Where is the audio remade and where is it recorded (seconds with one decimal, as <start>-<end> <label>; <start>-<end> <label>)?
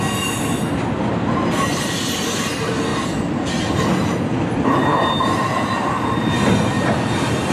0.0-7.5 recorded